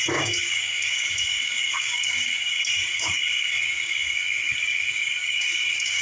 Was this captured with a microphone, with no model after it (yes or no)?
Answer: no